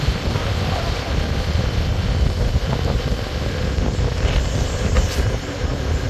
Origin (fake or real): real